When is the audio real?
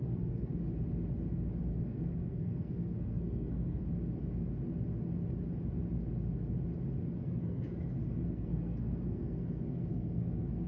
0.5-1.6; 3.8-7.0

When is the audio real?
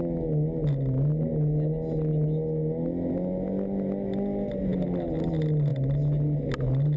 0.0-7.0